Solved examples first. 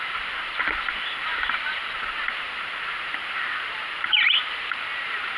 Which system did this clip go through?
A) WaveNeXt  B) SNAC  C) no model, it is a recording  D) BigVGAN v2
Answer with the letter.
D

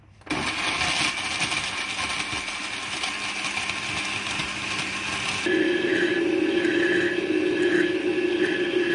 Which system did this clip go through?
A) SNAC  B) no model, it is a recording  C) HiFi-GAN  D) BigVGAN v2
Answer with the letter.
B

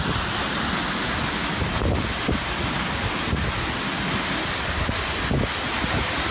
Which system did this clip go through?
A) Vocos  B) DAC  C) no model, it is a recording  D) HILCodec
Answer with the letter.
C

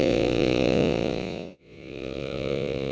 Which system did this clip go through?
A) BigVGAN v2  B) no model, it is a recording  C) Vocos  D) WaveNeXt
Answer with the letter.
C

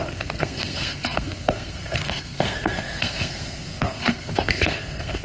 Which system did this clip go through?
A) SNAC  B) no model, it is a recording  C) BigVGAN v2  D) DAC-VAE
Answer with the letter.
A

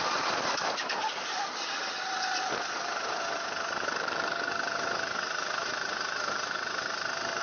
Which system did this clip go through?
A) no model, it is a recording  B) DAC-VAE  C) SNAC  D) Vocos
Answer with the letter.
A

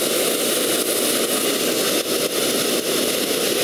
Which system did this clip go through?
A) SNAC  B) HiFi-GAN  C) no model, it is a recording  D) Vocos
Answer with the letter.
C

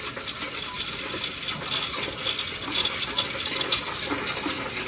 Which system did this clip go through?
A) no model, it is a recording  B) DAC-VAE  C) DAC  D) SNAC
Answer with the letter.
A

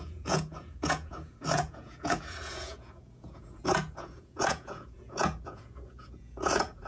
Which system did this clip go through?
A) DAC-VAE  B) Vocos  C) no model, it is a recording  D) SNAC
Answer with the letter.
B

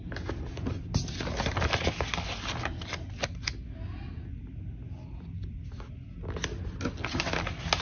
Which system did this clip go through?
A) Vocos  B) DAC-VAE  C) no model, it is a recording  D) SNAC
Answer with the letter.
C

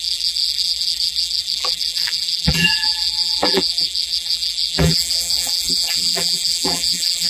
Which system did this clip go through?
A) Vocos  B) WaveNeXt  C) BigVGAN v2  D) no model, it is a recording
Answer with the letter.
C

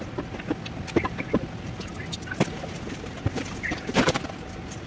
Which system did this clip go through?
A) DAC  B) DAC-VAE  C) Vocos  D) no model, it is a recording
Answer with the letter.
D